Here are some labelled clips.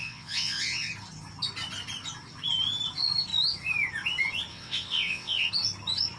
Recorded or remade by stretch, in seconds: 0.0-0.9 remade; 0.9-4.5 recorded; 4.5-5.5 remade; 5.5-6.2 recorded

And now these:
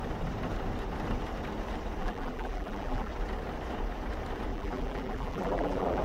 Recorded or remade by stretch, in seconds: 0.0-2.0 recorded; 2.0-3.1 remade; 3.1-4.5 recorded; 4.5-6.0 remade

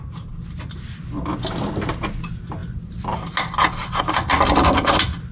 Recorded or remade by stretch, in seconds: 0.0-5.3 recorded

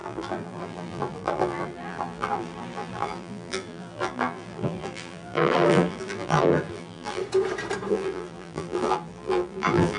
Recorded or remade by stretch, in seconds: 0.0-7.2 remade; 7.2-7.9 recorded; 7.9-10.0 remade